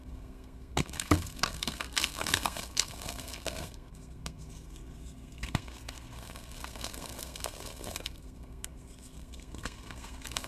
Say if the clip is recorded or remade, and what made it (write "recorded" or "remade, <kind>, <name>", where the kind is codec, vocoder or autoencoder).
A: remade, codec, SNAC